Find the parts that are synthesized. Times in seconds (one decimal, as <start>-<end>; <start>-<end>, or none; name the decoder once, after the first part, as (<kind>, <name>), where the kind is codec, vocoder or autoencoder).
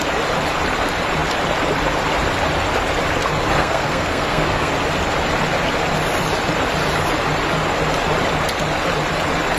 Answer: 3.6-4.7 (codec, SNAC)